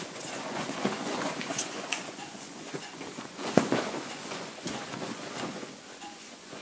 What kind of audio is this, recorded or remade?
remade